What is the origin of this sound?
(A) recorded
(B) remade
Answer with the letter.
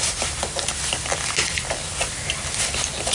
A